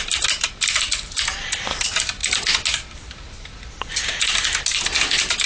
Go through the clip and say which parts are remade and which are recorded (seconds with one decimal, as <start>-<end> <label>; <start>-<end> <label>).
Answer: 0.0-5.5 recorded